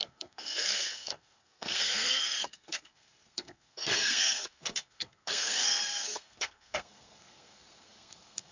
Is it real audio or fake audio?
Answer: fake